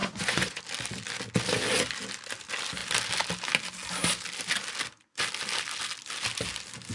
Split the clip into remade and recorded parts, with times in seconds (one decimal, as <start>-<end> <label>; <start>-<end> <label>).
0.0-0.6 remade; 0.6-6.9 recorded